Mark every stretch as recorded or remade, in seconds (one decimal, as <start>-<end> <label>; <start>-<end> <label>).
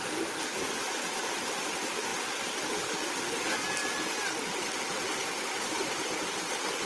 0.0-6.9 recorded